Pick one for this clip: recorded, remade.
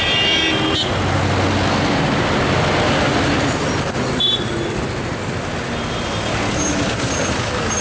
recorded